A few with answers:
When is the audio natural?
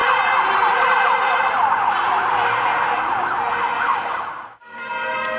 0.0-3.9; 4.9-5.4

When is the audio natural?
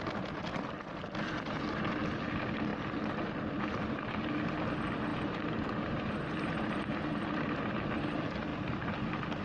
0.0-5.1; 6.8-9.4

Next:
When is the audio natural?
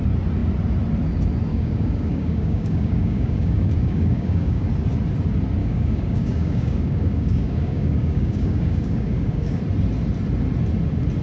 0.0-1.5; 4.7-5.6; 9.6-11.2